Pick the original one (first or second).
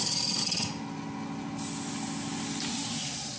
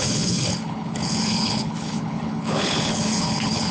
first